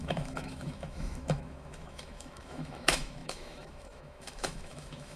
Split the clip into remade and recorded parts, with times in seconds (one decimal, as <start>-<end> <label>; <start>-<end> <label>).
0.0-5.2 remade